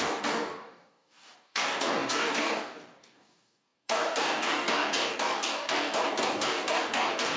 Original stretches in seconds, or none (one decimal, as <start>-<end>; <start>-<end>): none